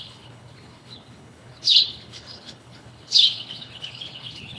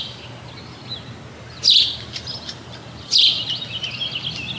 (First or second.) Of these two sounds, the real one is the second